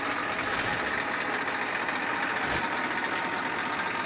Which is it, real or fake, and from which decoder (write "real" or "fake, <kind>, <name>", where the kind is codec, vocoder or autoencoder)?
real